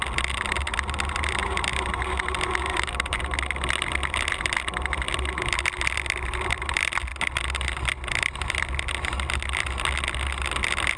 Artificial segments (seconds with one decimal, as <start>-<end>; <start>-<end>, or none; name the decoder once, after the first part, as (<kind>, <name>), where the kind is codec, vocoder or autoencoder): none